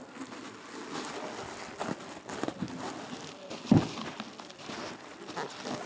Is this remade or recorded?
recorded